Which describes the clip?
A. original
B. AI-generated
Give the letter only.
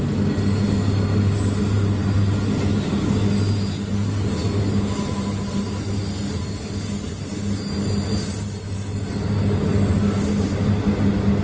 A